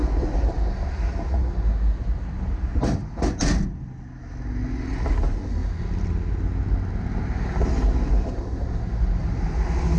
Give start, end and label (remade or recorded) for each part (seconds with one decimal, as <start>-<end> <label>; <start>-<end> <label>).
0.0-9.2 recorded; 9.2-10.0 remade

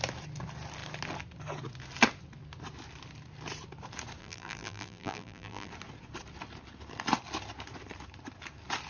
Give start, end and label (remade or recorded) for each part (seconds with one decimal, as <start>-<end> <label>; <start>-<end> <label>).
0.0-4.2 recorded; 4.2-5.7 remade; 5.7-8.9 recorded

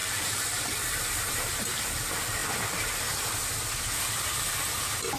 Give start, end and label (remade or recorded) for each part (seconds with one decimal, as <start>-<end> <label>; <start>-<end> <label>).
0.0-1.6 remade; 1.6-5.2 recorded

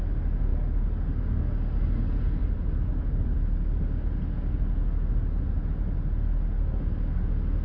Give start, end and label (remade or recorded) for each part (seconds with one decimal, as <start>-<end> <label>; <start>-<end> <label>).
0.0-2.4 recorded; 2.4-3.8 remade; 3.8-7.6 recorded

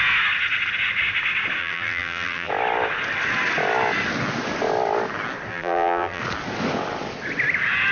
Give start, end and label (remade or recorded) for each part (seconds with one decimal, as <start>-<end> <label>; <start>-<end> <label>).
0.0-1.6 recorded; 1.6-2.5 remade; 2.5-5.5 recorded; 5.5-6.2 remade; 6.2-7.9 recorded

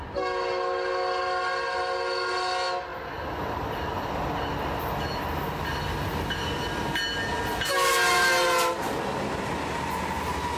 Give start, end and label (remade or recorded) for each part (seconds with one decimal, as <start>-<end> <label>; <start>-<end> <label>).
0.0-10.6 recorded

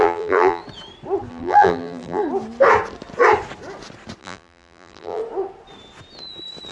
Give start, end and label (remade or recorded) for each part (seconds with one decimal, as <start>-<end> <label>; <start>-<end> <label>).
0.0-0.6 remade; 0.6-1.3 recorded; 1.3-2.2 remade; 2.2-4.2 recorded; 4.2-5.2 remade; 5.2-6.7 recorded

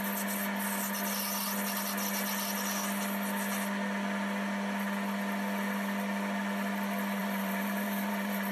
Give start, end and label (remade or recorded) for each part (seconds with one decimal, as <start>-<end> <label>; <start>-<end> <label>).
0.0-7.2 recorded; 7.2-8.5 remade